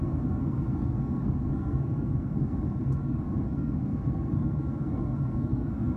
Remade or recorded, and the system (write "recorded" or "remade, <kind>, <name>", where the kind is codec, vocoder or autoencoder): remade, codec, SNAC